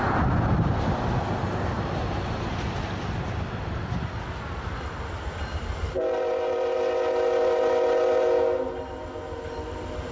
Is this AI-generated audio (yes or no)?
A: no